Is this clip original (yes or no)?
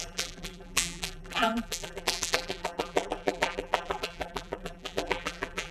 no